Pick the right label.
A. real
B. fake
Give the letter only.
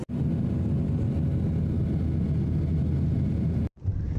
A